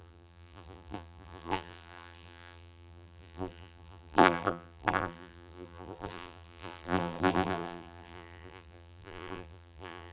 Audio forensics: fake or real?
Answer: fake